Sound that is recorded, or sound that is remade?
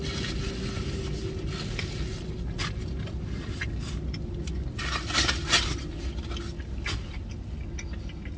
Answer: recorded